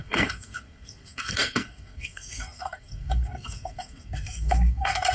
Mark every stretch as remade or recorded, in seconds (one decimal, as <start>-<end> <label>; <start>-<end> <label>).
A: 0.0-5.1 remade

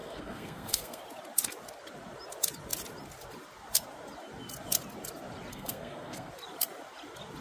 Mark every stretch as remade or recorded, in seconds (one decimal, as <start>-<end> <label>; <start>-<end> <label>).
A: 0.0-1.0 remade; 1.0-5.5 recorded; 5.5-6.3 remade; 6.3-7.4 recorded

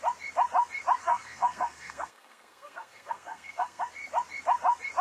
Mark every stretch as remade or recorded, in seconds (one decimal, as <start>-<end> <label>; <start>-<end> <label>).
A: 0.0-1.0 recorded; 1.0-3.8 remade; 3.8-5.0 recorded